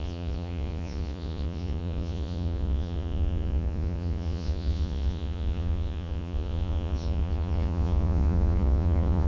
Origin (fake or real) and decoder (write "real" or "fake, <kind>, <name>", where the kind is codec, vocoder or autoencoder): fake, vocoder, Vocos